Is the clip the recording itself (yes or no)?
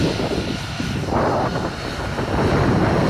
yes